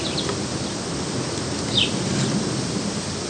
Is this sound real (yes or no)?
yes